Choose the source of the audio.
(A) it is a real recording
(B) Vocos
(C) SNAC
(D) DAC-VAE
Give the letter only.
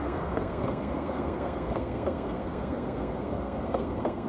C